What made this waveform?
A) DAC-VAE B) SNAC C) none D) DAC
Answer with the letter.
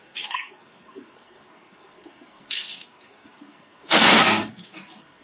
B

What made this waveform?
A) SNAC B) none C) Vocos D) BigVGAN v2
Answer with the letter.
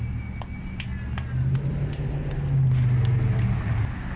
B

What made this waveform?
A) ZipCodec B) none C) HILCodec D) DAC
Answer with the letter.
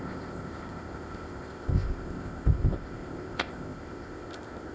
A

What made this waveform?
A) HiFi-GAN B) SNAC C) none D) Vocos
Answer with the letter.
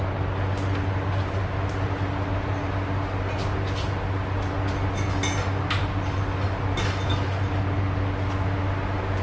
C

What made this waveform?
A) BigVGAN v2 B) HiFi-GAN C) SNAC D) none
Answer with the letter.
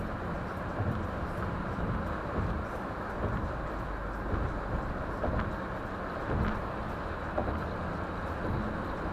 D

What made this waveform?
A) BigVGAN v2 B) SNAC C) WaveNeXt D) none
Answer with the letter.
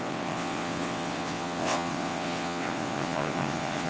C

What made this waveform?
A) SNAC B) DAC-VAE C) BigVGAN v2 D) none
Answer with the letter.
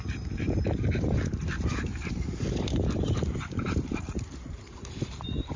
C